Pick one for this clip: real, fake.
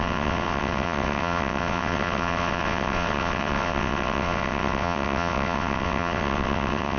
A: fake